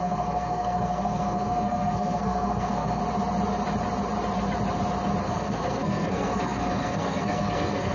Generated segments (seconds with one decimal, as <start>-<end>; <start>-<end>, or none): 0.0-3.0; 5.2-7.9